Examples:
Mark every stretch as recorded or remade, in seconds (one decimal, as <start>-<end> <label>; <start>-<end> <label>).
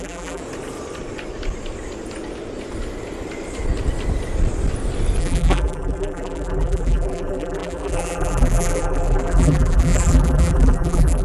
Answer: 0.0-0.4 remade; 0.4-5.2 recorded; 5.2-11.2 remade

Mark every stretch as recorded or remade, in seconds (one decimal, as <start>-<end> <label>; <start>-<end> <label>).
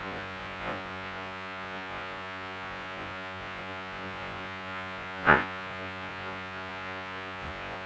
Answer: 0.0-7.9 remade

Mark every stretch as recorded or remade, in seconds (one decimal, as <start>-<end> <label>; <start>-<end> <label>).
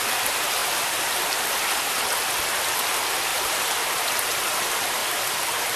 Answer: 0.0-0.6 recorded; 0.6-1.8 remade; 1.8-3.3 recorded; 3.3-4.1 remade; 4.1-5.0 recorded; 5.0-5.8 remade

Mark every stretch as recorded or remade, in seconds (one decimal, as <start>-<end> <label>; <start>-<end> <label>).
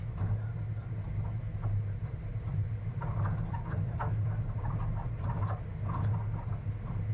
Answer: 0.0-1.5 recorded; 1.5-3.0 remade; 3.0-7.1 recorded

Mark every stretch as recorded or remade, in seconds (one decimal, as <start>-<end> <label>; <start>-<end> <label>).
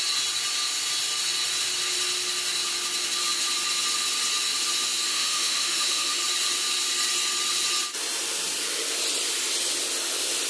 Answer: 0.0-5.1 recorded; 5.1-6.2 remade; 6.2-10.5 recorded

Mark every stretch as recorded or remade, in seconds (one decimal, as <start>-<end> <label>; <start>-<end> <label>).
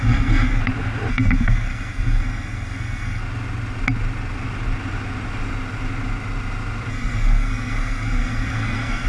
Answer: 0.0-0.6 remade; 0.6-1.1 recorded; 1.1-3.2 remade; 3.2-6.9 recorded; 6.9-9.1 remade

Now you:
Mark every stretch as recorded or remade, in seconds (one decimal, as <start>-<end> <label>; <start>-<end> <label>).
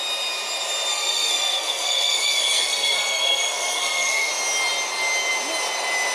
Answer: 0.0-0.9 recorded; 0.9-4.3 remade; 4.3-6.1 recorded